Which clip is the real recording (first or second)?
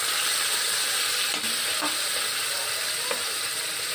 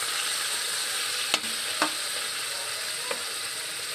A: second